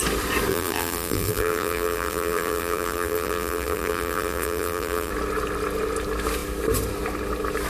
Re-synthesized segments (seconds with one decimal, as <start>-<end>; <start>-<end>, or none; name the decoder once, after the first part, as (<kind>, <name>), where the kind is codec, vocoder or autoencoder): 0.5-5.1 (vocoder, BigVGAN v2)